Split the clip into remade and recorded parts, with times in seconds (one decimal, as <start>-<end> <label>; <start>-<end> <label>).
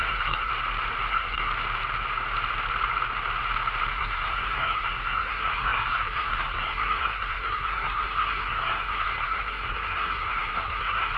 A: 0.0-0.5 remade; 0.5-1.1 recorded; 1.1-1.5 remade; 1.5-3.9 recorded; 3.9-11.2 remade